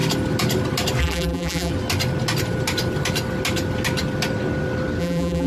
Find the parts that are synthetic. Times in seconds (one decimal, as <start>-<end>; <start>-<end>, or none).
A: 1.0-1.7; 5.0-5.5